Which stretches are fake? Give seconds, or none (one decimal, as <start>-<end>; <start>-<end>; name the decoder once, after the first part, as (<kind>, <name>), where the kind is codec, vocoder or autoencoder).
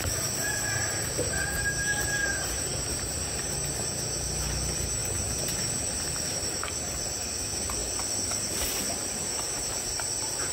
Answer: 0.0-5.0 (vocoder, BigVGAN v2); 6.4-7.8